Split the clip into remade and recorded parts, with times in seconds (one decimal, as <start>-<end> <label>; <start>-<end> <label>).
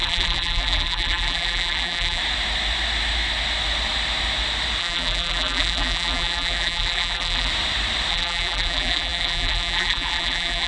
0.0-2.2 remade; 2.2-4.8 recorded; 4.8-7.5 remade; 7.5-8.1 recorded; 8.1-10.7 remade